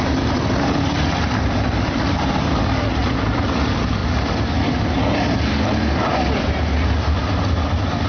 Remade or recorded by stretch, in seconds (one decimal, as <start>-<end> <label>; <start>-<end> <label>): 0.0-4.0 remade; 4.0-6.2 recorded; 6.2-8.1 remade